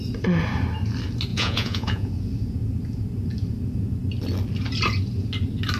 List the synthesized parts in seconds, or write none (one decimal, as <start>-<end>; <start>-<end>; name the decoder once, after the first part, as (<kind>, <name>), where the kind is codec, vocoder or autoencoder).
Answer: 1.3-2.1 (vocoder, Vocos)